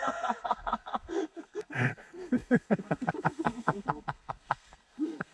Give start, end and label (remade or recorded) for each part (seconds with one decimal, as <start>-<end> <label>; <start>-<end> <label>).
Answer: 0.0-5.3 remade